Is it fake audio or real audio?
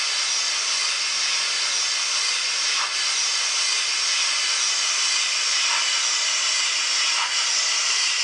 real